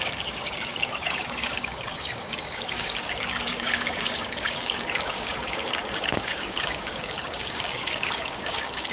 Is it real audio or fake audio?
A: fake